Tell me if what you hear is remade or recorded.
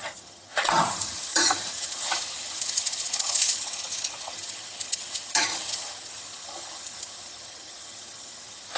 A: remade